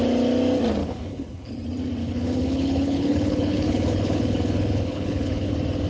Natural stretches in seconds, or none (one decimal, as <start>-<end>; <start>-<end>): 0.0-0.8; 1.5-2.0; 5.5-5.9